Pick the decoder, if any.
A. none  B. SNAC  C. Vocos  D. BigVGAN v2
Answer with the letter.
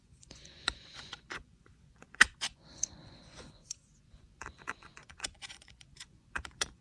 C